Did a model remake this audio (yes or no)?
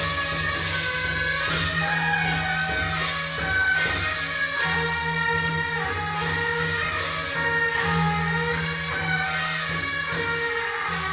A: no